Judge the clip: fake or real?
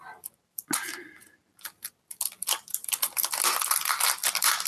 real